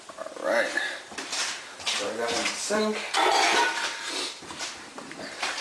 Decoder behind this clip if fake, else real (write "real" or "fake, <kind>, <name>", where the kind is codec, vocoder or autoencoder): fake, vocoder, BigVGAN v2